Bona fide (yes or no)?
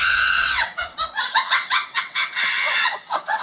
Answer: no